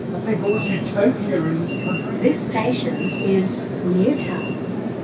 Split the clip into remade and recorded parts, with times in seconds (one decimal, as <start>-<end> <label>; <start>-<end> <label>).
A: 0.0-1.9 remade; 1.9-2.5 recorded; 2.5-3.4 remade; 3.4-5.0 recorded